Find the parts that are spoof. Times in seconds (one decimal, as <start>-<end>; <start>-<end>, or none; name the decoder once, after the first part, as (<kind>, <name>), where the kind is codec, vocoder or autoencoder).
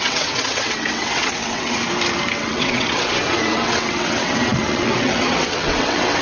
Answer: 0.0-1.8 (vocoder, WaveNeXt); 2.4-6.2